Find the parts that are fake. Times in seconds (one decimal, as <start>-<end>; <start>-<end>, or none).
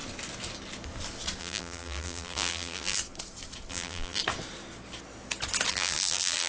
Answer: 1.4-3.0; 3.7-4.2; 5.7-6.5